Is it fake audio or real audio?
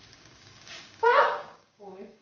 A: fake